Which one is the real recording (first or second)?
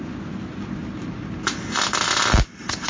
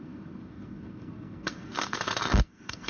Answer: first